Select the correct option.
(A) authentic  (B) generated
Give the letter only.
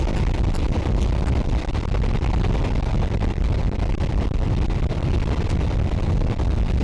A